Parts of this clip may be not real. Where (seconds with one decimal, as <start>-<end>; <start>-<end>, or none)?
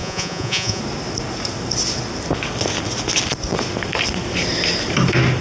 0.0-0.8